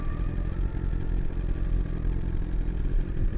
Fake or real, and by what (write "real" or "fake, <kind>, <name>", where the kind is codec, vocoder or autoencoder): real